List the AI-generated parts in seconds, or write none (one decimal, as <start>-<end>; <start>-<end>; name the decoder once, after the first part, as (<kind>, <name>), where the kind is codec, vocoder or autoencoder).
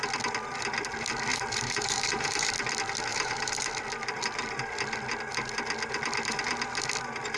1.3-2.5 (vocoder, BigVGAN v2); 3.1-3.7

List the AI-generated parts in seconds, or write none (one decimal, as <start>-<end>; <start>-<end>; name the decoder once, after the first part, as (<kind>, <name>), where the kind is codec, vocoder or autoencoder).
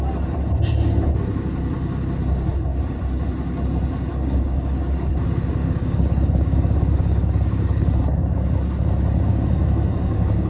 4.1-5.1 (codec, DAC); 5.6-8.1; 9.3-10.5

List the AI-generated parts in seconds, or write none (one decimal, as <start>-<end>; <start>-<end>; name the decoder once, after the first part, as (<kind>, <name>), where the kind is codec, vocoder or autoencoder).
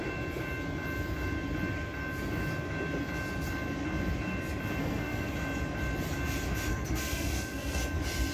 4.8-5.3 (codec, SNAC); 6.7-7.8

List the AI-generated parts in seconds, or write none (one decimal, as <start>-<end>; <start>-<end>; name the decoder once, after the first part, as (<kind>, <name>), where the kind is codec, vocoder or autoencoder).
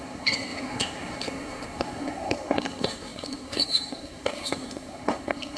0.0-5.6 (codec, SNAC)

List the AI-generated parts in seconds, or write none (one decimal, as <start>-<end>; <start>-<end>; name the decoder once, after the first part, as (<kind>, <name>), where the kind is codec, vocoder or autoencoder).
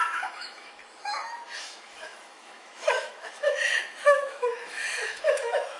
0.0-0.8 (autoencoder, DAC-VAE); 1.6-5.8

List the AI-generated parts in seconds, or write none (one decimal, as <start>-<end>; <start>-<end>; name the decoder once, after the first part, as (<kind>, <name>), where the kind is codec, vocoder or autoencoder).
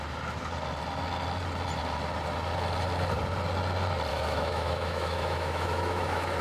4.1-6.4 (autoencoder, DAC-VAE)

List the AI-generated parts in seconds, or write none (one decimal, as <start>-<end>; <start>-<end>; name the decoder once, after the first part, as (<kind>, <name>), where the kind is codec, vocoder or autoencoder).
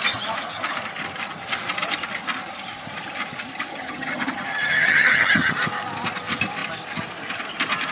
3.7-5.5 (vocoder, HiFi-GAN)